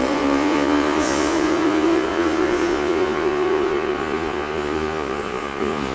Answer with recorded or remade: remade